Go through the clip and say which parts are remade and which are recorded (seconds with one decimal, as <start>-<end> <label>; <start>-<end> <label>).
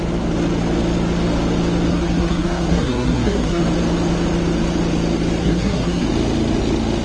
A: 0.0-1.9 recorded; 1.9-3.6 remade; 3.6-5.4 recorded; 5.4-6.1 remade; 6.1-7.0 recorded